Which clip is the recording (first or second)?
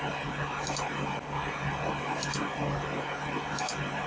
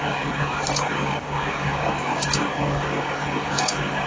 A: first